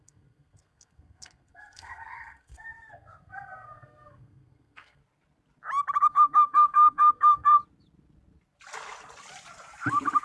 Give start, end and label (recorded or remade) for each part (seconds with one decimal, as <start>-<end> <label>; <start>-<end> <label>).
0.0-5.0 remade; 5.0-6.0 recorded; 6.0-7.6 remade; 7.6-10.2 recorded